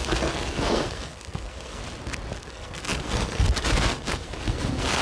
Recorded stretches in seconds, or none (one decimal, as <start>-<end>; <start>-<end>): 1.8-2.4